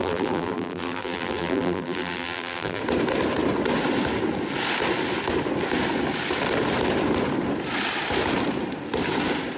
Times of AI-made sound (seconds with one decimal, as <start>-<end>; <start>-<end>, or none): 0.0-2.8